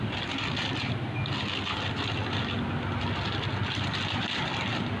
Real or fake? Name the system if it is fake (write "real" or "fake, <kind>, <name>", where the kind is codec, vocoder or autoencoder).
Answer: real